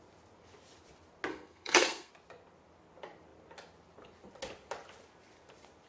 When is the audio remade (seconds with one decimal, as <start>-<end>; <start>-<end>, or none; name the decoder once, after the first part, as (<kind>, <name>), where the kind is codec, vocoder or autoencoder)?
1.3-2.1 (codec, SNAC)